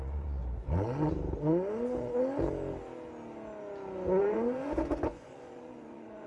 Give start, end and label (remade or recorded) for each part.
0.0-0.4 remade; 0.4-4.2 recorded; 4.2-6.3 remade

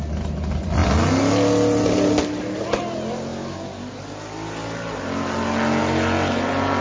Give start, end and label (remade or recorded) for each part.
0.0-6.8 recorded

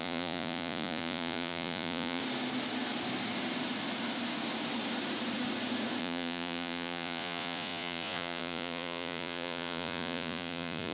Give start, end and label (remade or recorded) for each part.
0.0-2.2 remade; 2.2-6.0 recorded; 6.0-10.9 remade

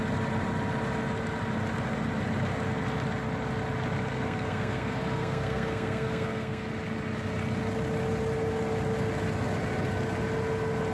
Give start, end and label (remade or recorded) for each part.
0.0-4.1 recorded; 4.1-6.7 remade; 6.7-10.9 recorded

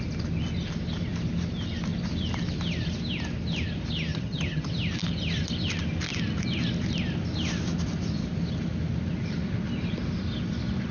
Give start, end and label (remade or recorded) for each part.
0.0-4.1 recorded; 4.1-4.7 remade; 4.7-10.9 recorded

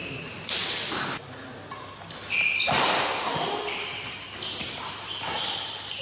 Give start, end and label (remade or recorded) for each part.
0.0-6.0 recorded